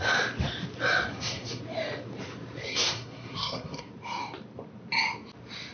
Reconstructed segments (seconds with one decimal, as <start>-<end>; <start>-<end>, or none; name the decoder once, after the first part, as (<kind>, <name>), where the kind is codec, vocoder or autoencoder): 1.1-1.6 (codec, SNAC); 2.6-3.9